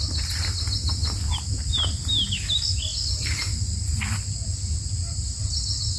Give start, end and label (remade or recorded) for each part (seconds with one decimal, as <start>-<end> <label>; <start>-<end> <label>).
0.0-6.0 recorded